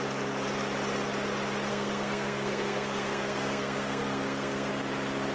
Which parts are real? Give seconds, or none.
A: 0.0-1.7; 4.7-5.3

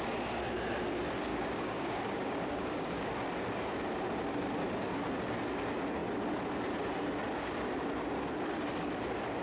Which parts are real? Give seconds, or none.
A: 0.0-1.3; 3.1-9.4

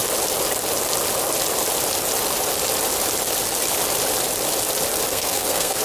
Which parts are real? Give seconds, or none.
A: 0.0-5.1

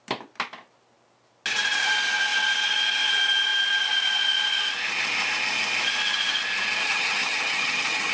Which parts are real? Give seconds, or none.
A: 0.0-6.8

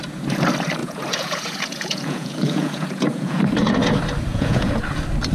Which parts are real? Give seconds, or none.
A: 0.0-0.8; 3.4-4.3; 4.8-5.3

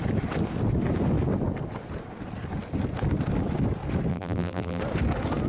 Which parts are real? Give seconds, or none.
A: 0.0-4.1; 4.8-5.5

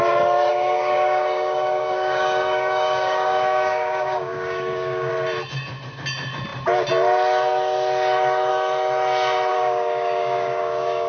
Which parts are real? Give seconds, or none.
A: 0.0-0.5; 5.1-9.5

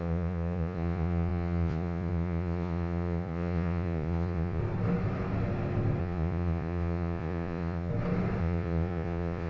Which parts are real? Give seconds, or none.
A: 4.6-6.0; 7.9-8.4